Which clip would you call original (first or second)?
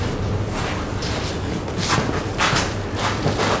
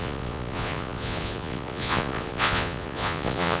first